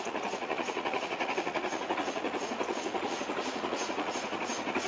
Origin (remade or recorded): remade